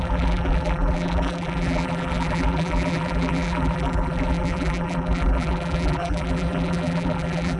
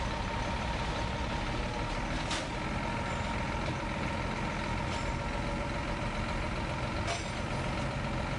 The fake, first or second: first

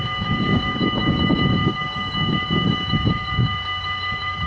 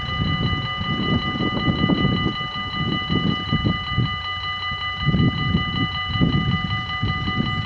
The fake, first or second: first